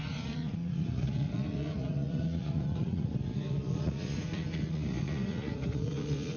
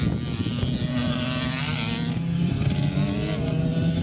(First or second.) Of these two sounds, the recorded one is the second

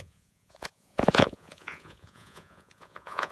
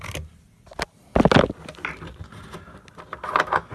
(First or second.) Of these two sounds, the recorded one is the second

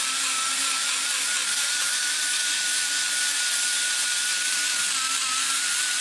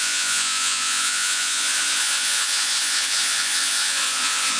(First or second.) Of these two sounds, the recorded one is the first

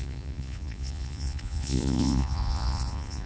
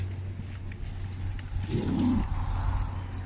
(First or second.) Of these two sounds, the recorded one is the second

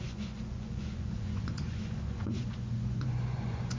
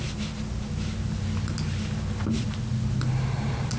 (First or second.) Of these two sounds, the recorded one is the second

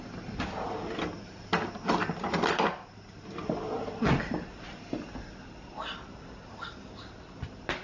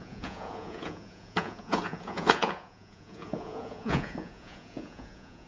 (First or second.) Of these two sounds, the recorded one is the first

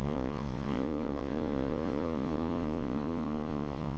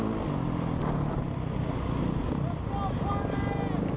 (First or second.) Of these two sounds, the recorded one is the second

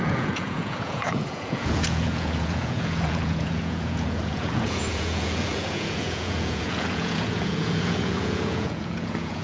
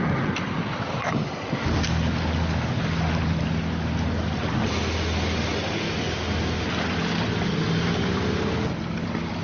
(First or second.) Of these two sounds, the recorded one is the second